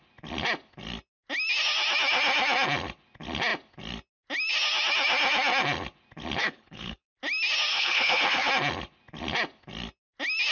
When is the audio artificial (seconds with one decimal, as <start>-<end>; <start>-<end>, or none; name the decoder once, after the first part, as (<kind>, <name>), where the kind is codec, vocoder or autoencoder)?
6.4-7.1 (codec, HILCodec); 7.7-8.5